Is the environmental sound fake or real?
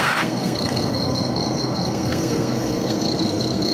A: fake